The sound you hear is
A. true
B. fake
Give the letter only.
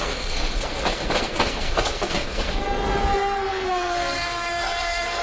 B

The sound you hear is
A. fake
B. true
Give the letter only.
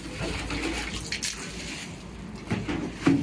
B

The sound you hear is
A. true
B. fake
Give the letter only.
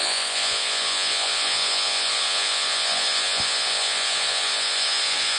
B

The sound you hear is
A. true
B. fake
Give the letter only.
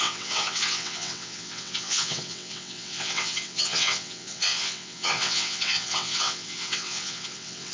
B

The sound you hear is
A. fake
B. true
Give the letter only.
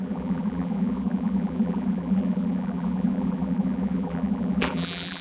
A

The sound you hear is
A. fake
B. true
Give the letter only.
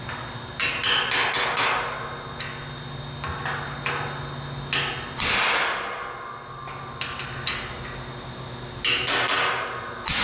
B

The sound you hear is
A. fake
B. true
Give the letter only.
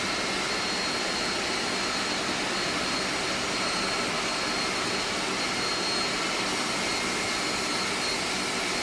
B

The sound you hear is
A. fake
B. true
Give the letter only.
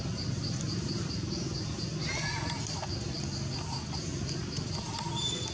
B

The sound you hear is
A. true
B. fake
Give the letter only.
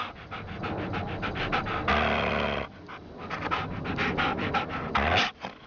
A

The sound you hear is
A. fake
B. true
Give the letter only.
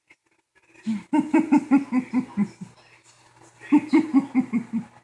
B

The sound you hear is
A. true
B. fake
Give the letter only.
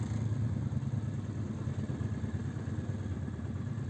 A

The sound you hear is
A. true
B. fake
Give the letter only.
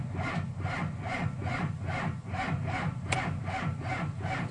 A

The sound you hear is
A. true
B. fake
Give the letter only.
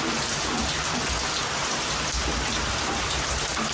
A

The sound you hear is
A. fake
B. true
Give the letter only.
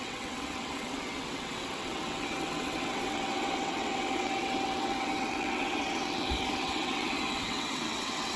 A